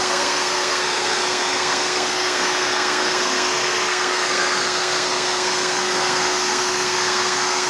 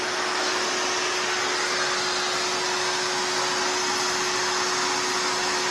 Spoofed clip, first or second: first